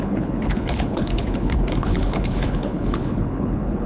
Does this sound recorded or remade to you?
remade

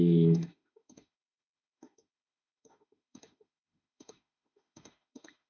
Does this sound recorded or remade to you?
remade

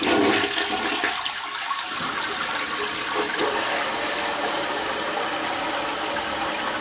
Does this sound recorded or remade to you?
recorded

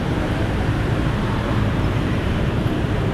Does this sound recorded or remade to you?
remade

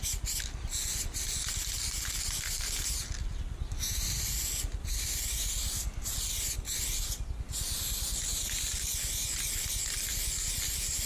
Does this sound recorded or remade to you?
recorded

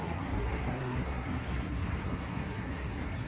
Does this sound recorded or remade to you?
remade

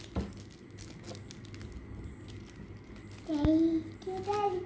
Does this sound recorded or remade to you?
recorded